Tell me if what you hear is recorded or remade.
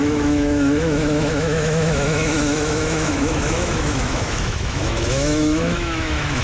remade